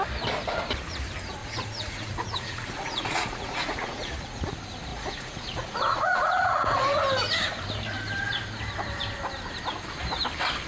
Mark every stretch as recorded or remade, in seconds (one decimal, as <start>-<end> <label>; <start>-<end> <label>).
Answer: 0.0-1.4 recorded; 1.4-4.5 remade; 4.5-4.9 recorded; 4.9-7.0 remade; 7.0-10.7 recorded